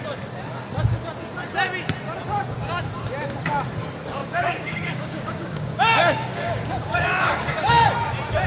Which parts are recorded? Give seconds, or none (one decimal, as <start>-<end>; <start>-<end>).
0.0-4.2; 7.7-8.5